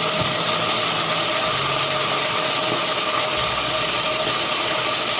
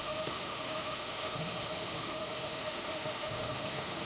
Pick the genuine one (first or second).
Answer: first